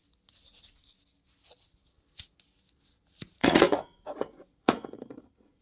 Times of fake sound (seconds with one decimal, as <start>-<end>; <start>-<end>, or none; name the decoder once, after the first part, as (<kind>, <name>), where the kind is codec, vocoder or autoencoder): 3.4-5.6 (vocoder, Vocos)